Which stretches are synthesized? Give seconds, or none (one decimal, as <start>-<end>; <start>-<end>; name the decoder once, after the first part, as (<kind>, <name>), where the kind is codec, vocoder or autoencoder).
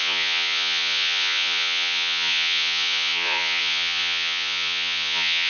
0.0-5.5 (vocoder, Vocos)